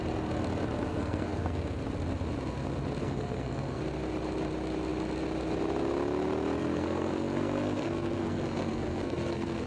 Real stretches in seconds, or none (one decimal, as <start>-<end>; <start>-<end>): 0.0-0.9; 1.8-3.0; 3.8-6.6